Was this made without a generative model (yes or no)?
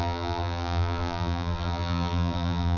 no